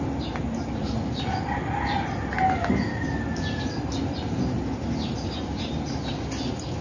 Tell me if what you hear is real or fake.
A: real